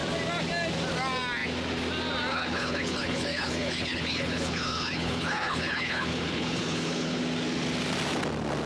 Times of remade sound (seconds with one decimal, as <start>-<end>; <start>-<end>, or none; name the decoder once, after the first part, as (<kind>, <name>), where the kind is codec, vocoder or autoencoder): 2.3-7.2 (codec, HILCodec)